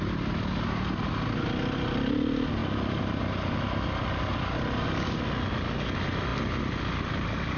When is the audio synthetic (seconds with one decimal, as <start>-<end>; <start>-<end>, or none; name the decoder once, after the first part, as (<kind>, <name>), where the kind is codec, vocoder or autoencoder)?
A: none